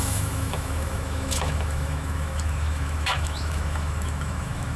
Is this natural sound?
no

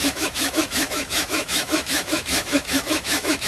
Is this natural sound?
no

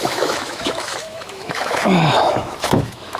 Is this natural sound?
no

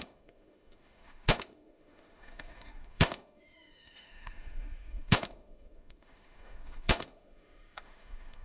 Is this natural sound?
no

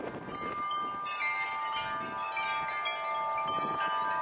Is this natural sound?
yes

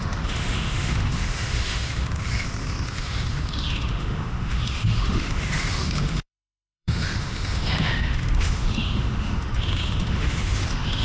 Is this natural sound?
no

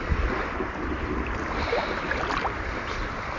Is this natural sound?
yes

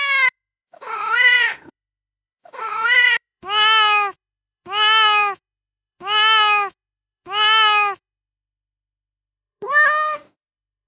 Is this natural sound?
no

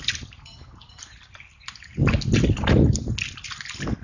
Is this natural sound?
yes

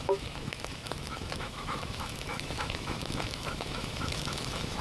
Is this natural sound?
no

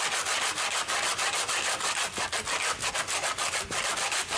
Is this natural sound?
yes